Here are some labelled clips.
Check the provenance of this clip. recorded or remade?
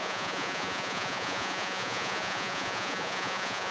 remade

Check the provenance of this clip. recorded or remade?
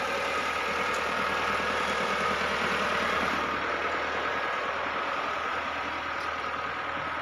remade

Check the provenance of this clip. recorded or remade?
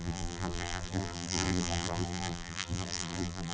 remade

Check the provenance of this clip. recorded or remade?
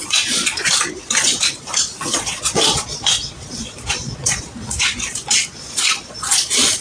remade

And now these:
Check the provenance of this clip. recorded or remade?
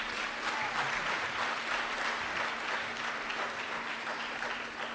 recorded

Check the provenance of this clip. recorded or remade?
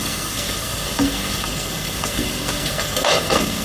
remade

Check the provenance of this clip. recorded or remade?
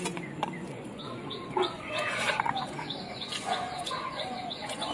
remade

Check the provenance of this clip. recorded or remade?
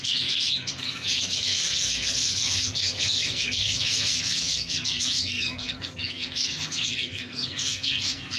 remade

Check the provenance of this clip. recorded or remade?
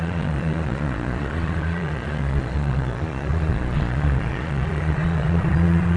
remade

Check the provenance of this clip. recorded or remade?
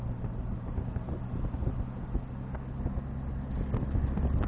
recorded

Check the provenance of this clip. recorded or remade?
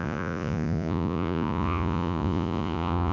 remade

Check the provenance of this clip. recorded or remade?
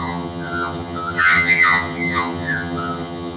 remade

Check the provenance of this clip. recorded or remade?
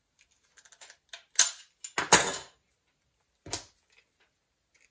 recorded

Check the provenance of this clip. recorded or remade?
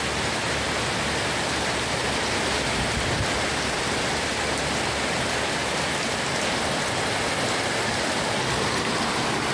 recorded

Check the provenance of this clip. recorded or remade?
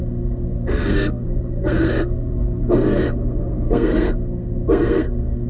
remade